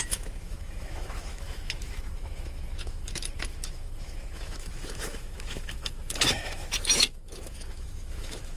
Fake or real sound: fake